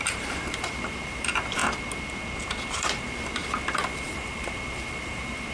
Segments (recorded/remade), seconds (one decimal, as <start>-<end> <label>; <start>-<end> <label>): 0.0-1.6 remade; 1.6-2.6 recorded; 2.6-5.5 remade